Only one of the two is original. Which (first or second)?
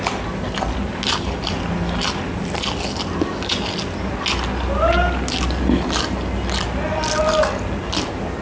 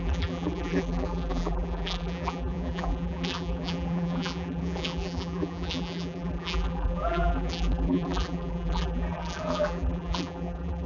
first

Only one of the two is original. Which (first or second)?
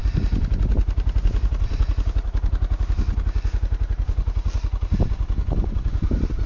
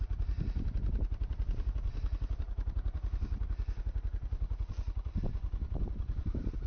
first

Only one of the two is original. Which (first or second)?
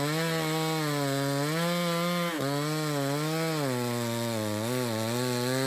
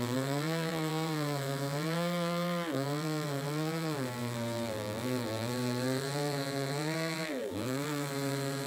first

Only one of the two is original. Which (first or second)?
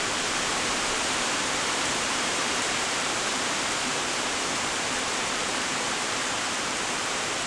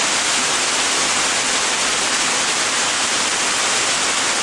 second